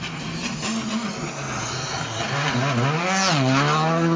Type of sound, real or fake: real